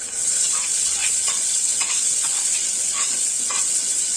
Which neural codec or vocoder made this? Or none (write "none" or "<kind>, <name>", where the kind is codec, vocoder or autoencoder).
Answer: vocoder, WaveNeXt